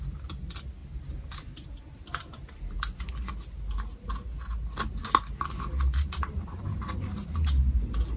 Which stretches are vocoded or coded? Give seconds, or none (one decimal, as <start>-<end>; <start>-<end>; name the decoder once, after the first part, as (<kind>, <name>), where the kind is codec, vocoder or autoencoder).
none